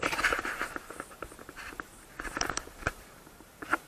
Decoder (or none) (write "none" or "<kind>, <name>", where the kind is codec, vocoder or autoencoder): vocoder, BigVGAN v2